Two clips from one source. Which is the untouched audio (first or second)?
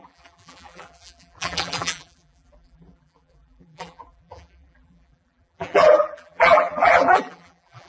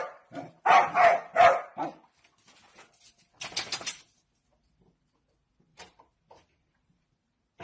second